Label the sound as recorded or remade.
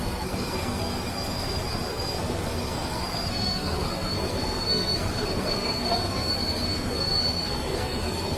remade